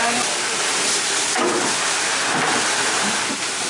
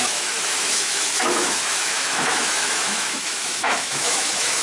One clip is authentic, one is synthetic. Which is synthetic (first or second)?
second